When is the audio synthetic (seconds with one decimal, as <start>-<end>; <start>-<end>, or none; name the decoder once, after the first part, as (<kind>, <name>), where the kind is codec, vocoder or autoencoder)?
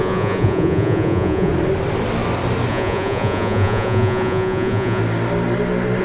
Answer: 0.0-1.5 (vocoder, Vocos); 2.7-5.0